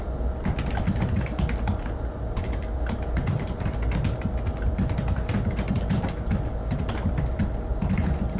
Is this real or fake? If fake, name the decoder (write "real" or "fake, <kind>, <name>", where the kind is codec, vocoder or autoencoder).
real